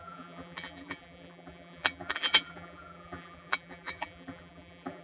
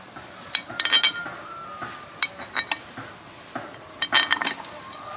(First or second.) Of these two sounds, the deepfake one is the first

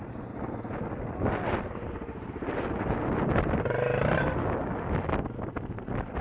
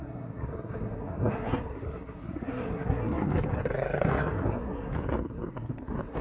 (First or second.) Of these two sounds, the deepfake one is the second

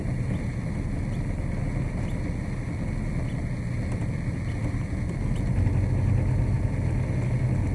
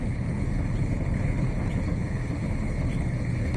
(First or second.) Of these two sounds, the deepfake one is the second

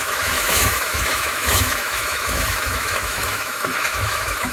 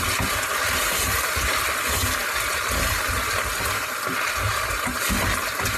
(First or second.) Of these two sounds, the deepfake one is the first